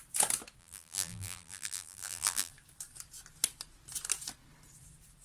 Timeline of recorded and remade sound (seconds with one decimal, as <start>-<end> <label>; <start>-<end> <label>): 0.0-0.6 recorded; 0.6-2.5 remade; 2.5-5.2 recorded